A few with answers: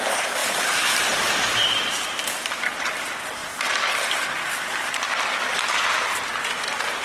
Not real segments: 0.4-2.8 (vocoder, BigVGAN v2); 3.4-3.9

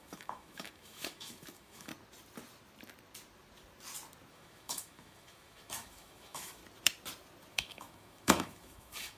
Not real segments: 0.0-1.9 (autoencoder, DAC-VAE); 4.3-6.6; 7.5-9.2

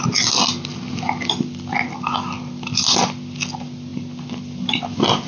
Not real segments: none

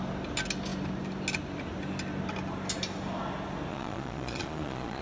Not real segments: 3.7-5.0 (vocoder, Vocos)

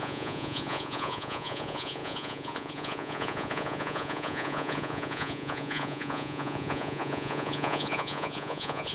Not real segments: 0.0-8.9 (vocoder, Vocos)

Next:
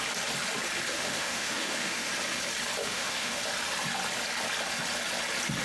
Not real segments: 0.9-2.1 (autoencoder, DAC-VAE); 2.8-3.4

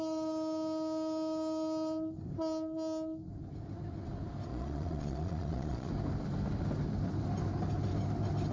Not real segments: 4.5-5.9 (vocoder, Vocos)